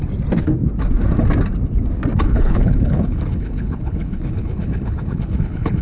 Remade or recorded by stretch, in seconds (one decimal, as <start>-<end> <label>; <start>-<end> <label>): 0.0-2.3 recorded; 2.3-5.8 remade